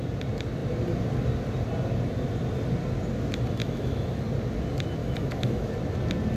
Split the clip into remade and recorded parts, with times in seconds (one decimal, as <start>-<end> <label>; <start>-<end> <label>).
0.0-3.6 recorded; 3.6-4.2 remade; 4.2-5.0 recorded; 5.0-5.7 remade; 5.7-6.4 recorded